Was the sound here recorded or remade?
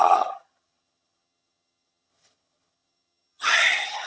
remade